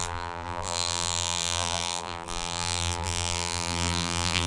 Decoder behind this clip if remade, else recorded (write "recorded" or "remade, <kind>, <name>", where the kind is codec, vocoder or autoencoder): remade, vocoder, BigVGAN v2